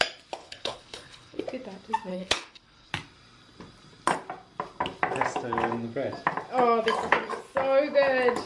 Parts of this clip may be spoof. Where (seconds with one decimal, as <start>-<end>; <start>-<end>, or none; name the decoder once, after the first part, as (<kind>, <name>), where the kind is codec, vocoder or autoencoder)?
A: 0.4-1.4 (codec, HILCodec); 2.1-2.9